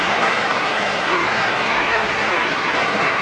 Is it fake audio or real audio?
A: fake